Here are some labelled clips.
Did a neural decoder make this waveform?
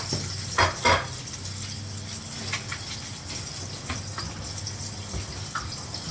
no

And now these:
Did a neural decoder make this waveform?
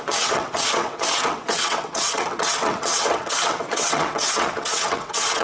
yes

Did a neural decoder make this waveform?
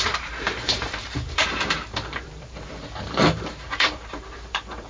yes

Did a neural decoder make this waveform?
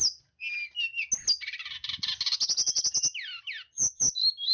no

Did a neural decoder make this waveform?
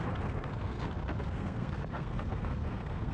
yes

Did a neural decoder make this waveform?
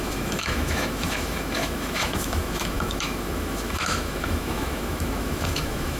yes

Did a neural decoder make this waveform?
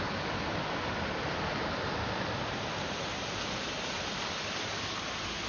no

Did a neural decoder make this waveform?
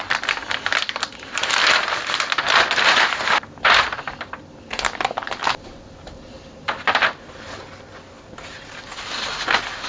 no